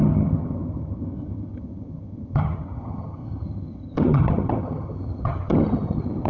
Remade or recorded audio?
remade